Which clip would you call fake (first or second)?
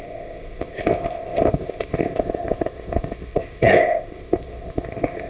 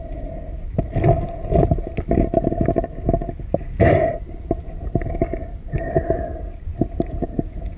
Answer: first